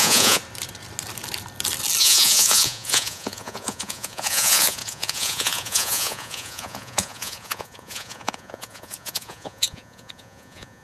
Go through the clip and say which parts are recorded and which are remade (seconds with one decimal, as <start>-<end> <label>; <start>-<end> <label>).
0.0-0.4 remade; 0.4-2.0 recorded; 2.0-10.8 remade

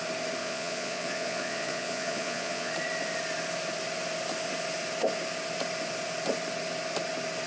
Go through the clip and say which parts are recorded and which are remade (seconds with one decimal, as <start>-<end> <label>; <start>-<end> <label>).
0.0-0.4 recorded; 0.4-2.7 remade; 2.7-7.5 recorded

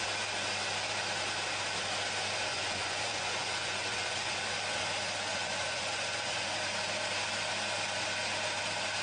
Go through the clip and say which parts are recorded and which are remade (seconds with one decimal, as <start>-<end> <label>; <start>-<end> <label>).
0.0-2.5 recorded; 2.5-4.4 remade; 4.4-5.3 recorded; 5.3-6.5 remade; 6.5-9.0 recorded

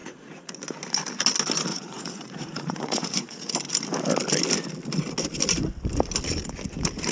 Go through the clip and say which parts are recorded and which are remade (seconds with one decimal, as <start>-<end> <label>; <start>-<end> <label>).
0.0-0.5 remade; 0.5-1.7 recorded; 1.7-3.5 remade; 3.5-7.1 recorded

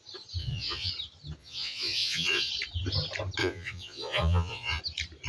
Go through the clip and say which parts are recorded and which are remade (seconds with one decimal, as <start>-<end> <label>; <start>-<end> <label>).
0.0-0.4 recorded; 0.4-0.9 remade; 0.9-1.4 recorded; 1.4-2.5 remade; 2.5-3.4 recorded; 3.4-4.8 remade; 4.8-5.3 recorded

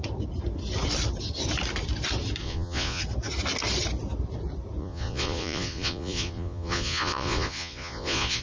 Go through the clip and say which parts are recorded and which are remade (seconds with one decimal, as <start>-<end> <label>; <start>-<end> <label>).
0.0-2.4 recorded; 2.4-3.0 remade; 3.0-4.8 recorded; 4.8-8.4 remade